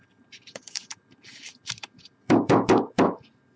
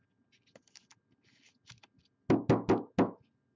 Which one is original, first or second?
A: second